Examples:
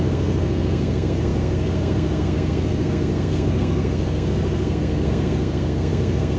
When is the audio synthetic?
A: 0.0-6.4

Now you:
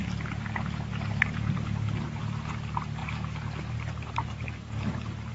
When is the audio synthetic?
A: 3.0-5.3

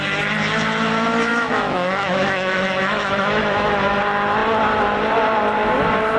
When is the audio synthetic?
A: 1.3-4.0

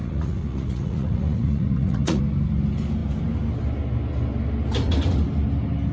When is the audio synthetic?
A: 0.0-2.2

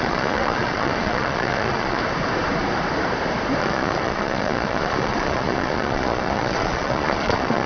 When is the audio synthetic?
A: 0.0-2.0; 3.6-7.7

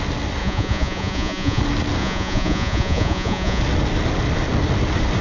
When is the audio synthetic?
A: 0.4-1.6; 2.0-3.6

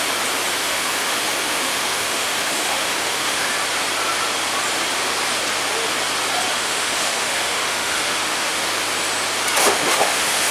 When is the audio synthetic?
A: 0.6-3.5; 6.5-8.7; 9.6-10.5